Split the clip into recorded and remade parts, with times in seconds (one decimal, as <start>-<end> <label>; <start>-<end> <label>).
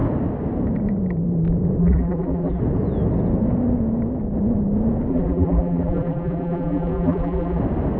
0.0-1.8 recorded; 1.8-2.6 remade; 2.6-5.1 recorded; 5.1-7.6 remade; 7.6-8.0 recorded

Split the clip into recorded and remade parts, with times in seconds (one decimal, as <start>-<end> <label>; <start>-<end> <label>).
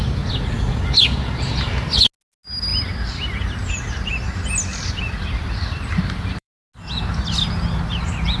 0.0-2.7 recorded; 2.7-3.7 remade; 3.7-4.7 recorded; 4.7-6.5 remade; 6.5-8.4 recorded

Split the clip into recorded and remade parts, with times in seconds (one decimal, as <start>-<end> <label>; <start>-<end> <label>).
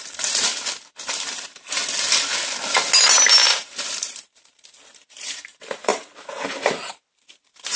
0.0-0.5 remade; 0.5-1.0 recorded; 1.0-1.8 remade; 1.8-3.5 recorded; 3.5-7.8 remade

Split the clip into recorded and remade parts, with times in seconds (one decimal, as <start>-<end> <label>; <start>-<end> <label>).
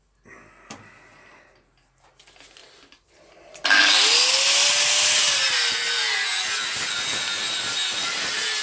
0.0-2.6 recorded; 2.6-3.8 remade; 3.8-5.2 recorded; 5.2-6.0 remade; 6.0-8.6 recorded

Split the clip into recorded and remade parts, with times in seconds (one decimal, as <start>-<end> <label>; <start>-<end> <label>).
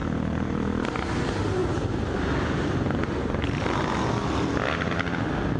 0.0-0.5 remade; 0.5-1.6 recorded; 1.6-2.2 remade; 2.2-5.6 recorded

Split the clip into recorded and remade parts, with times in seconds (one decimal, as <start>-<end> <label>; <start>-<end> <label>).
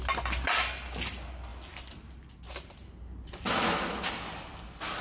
0.0-5.0 recorded